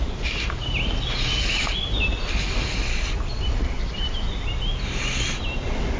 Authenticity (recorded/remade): recorded